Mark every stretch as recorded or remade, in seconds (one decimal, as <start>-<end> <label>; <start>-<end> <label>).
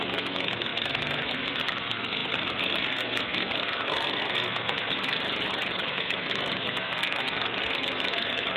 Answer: 0.0-5.2 remade; 5.2-5.9 recorded; 5.9-8.6 remade